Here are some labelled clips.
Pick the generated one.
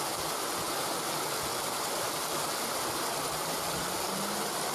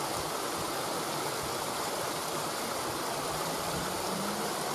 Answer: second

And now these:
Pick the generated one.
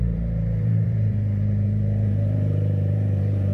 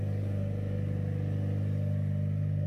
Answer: first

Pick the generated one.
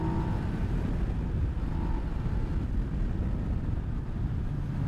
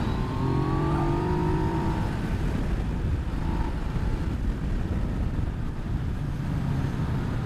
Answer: second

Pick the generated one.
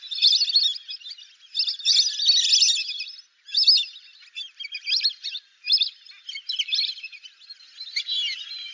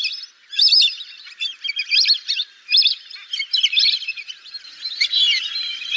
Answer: second